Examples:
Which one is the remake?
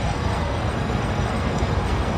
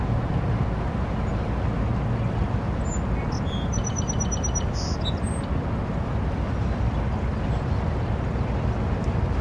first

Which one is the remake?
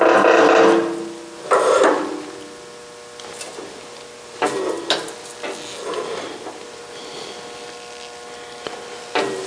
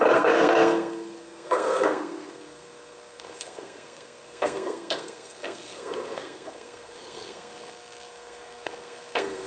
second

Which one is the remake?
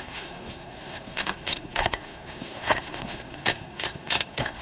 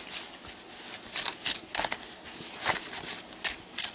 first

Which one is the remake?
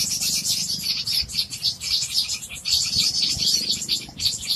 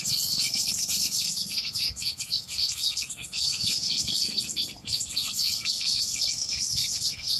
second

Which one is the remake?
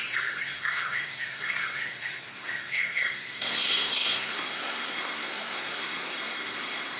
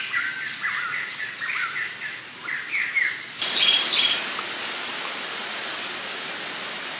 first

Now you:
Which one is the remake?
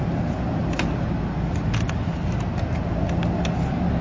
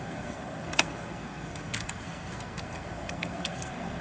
second